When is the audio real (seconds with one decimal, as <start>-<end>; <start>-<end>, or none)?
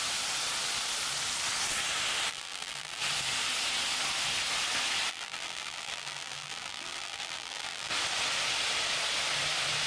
0.0-2.3; 3.0-5.1; 7.9-9.9